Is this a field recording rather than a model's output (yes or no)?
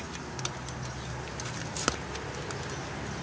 yes